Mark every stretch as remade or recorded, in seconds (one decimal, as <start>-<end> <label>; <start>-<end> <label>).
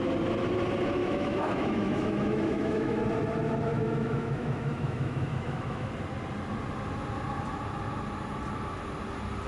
0.0-1.0 recorded; 1.0-3.0 remade; 3.0-3.7 recorded; 3.7-5.9 remade; 5.9-9.5 recorded